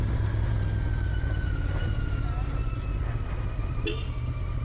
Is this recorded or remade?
recorded